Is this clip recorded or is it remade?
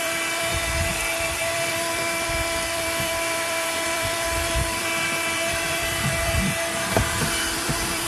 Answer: remade